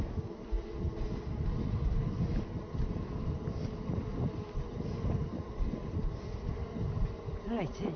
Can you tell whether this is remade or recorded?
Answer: recorded